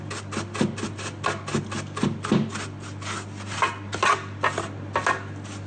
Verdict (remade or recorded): recorded